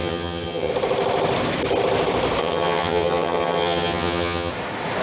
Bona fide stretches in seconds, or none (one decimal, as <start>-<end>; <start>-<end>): 0.7-2.4; 4.5-5.0